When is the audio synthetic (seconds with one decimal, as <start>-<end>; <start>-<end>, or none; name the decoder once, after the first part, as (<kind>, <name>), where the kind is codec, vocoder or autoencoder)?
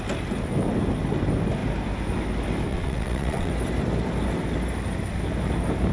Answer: 2.7-3.5 (vocoder, WaveNeXt)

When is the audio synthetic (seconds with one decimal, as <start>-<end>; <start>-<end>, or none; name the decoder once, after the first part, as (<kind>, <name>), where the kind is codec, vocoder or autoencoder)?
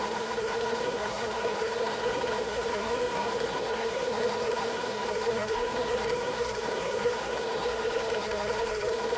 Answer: 0.0-9.2 (codec, SNAC)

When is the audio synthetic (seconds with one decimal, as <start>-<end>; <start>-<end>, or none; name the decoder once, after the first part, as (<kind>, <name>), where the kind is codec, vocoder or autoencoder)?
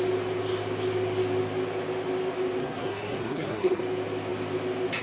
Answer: 2.6-3.8 (codec, SNAC)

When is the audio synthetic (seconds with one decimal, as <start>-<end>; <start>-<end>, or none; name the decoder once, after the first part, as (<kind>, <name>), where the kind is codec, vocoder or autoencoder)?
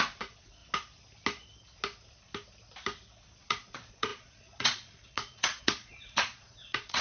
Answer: 0.0-0.6 (vocoder, Vocos); 3.4-7.0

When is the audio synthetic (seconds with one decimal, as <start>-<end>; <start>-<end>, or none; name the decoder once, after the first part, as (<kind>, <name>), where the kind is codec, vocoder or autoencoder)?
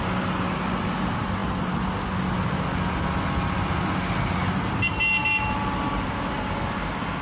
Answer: none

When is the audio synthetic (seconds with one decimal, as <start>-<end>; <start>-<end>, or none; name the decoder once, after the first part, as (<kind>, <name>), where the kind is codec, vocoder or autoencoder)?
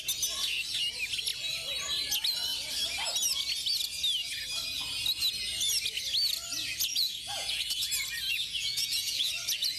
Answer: 6.9-7.9 (vocoder, Vocos); 8.3-9.3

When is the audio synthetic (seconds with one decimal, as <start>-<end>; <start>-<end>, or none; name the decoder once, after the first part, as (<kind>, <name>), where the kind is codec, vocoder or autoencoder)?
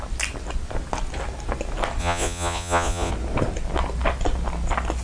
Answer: 2.0-3.1 (vocoder, Vocos)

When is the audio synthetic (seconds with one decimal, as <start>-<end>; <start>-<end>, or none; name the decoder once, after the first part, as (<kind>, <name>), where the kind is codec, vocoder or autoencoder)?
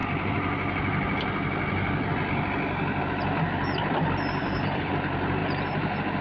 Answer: 4.4-4.9 (codec, HILCodec)